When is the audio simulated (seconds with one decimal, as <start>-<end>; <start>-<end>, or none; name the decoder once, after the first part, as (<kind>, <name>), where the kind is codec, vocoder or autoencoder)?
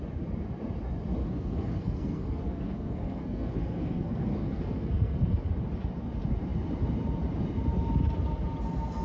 1.2-5.5 (codec, SNAC)